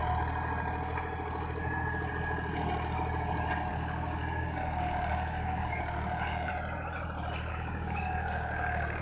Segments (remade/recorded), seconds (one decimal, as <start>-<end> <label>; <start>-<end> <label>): 0.0-3.7 recorded; 3.7-6.5 remade; 6.5-7.5 recorded; 7.5-9.0 remade